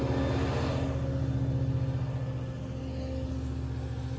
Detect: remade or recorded recorded